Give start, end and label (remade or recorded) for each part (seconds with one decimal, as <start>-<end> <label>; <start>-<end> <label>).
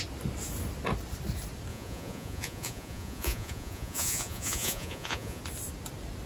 0.0-1.7 recorded; 1.7-5.4 remade; 5.4-6.3 recorded